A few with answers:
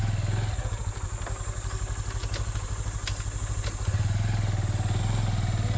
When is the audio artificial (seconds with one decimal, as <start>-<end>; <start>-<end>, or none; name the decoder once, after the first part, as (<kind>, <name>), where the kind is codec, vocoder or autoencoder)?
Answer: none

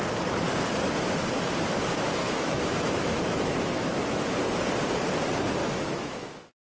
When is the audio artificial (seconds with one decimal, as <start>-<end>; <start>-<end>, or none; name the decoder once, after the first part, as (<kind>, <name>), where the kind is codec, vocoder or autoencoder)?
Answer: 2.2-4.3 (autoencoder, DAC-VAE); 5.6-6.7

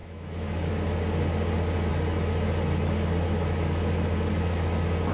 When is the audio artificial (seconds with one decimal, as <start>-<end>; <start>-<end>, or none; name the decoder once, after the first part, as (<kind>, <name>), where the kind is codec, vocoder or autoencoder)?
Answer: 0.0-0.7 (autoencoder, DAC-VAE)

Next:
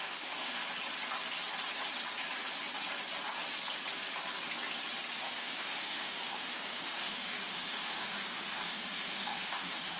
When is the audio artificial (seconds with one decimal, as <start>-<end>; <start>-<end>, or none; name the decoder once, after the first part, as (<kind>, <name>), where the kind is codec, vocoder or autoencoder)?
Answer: 0.0-0.6 (autoencoder, DAC-VAE); 5.2-10.0

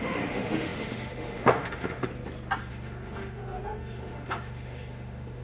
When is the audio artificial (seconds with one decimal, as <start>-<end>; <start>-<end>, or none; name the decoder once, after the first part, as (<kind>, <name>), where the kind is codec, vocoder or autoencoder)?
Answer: 0.0-2.1 (autoencoder, DAC-VAE); 2.7-5.4

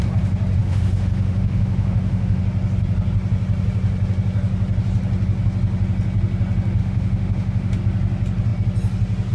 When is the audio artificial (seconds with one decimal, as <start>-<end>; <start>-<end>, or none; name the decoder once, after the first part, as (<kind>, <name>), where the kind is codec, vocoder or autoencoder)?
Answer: 0.6-2.4 (autoencoder, DAC-VAE); 6.8-7.8

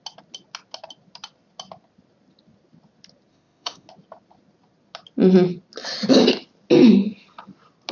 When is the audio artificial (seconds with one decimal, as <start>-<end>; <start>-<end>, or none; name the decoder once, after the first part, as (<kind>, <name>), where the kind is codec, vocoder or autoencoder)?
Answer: 3.3-3.9 (autoencoder, DAC-VAE)